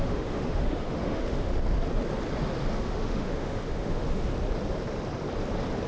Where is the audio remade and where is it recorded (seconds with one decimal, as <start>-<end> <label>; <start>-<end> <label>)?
0.0-1.5 remade; 1.5-2.7 recorded; 2.7-4.3 remade; 4.3-5.9 recorded